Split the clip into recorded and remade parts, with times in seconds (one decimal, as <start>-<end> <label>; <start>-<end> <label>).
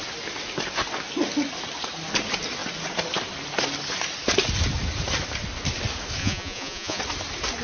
0.0-6.2 recorded; 6.2-7.0 remade; 7.0-7.6 recorded